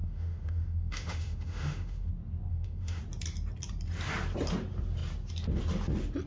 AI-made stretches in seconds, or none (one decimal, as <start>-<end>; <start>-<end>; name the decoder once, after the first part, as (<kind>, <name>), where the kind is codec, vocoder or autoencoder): 0.0-2.1 (autoencoder, DAC-VAE); 2.5-3.0